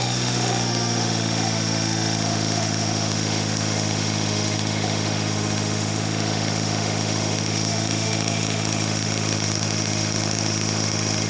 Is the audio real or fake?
fake